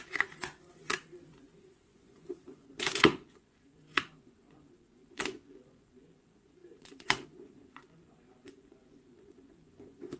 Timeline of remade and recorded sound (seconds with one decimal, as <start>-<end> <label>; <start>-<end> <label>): 0.0-10.2 remade